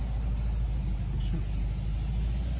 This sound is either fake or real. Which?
real